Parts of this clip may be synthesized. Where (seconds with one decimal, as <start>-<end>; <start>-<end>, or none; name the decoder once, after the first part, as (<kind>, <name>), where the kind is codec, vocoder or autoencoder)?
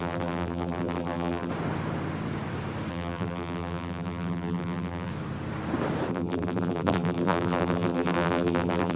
0.0-1.5 (vocoder, BigVGAN v2); 2.9-5.1; 6.1-9.0